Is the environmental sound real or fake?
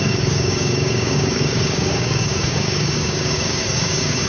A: fake